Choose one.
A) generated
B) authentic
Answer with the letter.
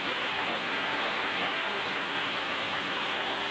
A